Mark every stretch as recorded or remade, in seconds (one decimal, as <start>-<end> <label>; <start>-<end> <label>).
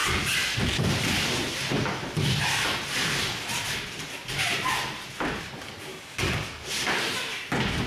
0.0-5.9 recorded; 5.9-6.7 remade; 6.7-7.9 recorded